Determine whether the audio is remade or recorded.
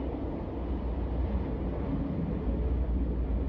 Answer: recorded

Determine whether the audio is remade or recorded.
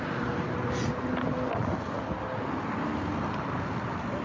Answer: recorded